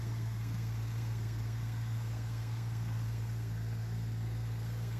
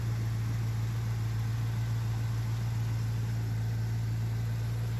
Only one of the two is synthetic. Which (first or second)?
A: first